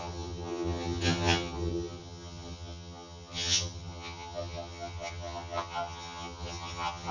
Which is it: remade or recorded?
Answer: remade